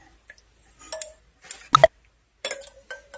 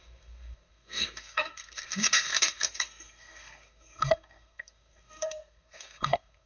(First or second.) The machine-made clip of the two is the second